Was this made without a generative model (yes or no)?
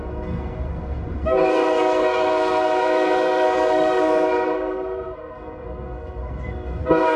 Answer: no